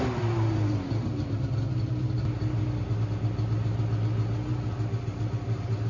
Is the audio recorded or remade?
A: recorded